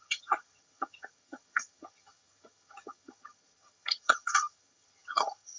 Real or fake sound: fake